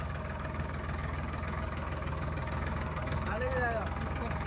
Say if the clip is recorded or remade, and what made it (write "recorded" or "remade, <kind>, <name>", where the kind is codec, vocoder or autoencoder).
remade, codec, DAC